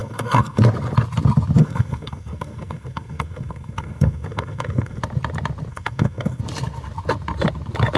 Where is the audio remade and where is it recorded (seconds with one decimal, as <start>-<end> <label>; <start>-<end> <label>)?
0.0-0.6 remade; 0.6-1.6 recorded; 1.6-5.0 remade; 5.0-5.7 recorded; 5.7-6.4 remade; 6.4-8.0 recorded